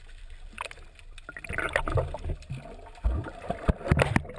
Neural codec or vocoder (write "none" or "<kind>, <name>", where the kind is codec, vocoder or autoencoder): none